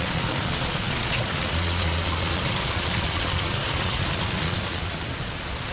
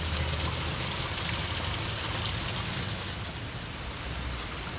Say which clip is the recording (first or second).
second